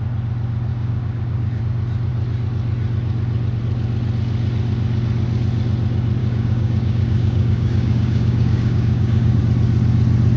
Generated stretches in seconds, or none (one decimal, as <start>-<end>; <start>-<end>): 0.7-1.6; 6.2-9.4

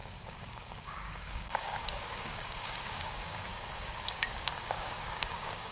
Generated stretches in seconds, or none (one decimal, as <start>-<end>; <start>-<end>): 0.0-5.7

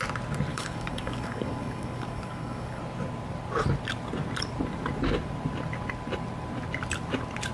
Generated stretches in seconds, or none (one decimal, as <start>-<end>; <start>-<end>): 0.5-2.8

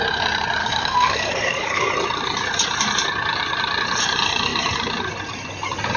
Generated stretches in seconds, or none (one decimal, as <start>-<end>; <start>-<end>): 0.6-1.9

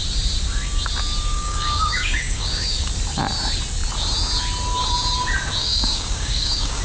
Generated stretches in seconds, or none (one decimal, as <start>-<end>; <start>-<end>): 1.3-2.9; 5.6-6.8